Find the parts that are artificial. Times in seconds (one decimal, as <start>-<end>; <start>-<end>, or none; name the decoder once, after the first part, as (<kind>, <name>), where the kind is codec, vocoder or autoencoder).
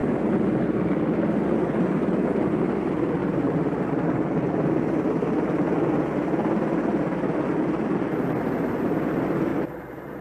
3.2-3.8 (vocoder, BigVGAN v2); 9.5-10.2